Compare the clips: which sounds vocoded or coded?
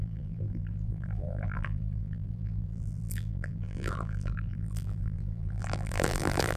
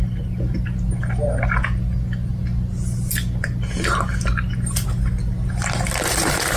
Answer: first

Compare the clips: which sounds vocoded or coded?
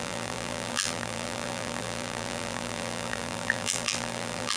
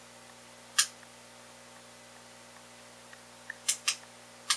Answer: first